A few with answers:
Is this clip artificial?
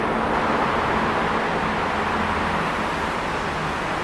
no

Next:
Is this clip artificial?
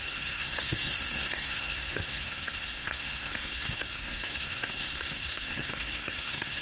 yes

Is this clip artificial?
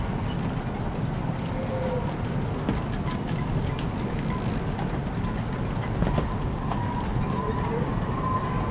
no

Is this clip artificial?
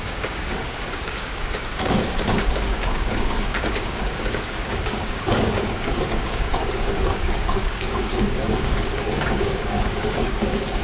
yes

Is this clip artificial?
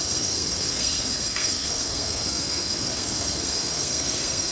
yes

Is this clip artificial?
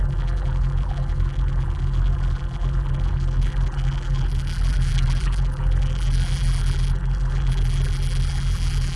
yes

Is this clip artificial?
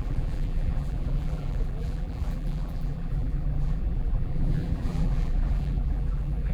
yes